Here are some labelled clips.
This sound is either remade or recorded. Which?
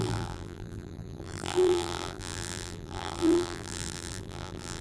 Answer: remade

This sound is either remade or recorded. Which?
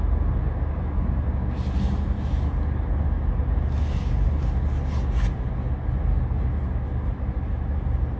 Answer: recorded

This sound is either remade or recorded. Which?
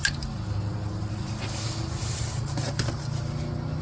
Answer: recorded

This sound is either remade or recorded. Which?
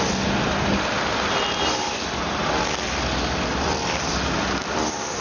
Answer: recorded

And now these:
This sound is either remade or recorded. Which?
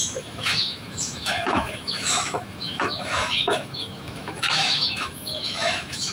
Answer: remade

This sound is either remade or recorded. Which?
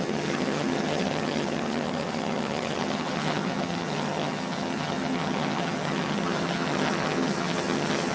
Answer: remade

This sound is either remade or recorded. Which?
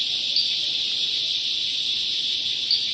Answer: remade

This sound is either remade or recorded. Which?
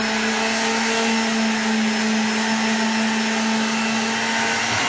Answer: recorded